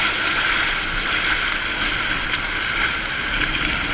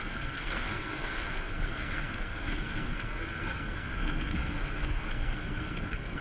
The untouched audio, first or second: first